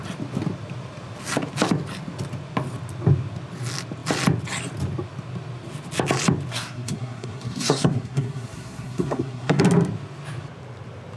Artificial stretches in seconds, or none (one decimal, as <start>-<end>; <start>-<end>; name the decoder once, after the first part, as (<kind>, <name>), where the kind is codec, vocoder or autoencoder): 6.5-9.6 (codec, SNAC)

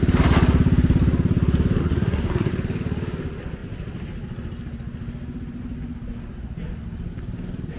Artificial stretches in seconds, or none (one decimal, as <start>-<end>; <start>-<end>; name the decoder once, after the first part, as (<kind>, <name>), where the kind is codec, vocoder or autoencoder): 1.8-2.5 (codec, SNAC)

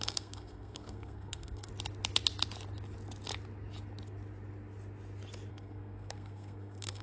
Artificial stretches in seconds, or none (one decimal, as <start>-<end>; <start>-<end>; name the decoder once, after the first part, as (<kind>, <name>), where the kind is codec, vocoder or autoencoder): 0.0-1.7 (codec, SNAC); 5.5-7.0

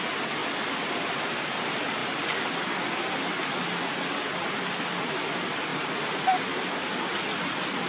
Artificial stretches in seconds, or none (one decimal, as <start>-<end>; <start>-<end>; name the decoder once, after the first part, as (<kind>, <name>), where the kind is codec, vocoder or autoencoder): none